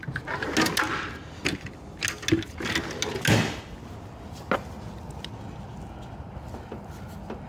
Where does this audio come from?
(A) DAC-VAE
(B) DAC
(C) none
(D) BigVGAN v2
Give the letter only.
C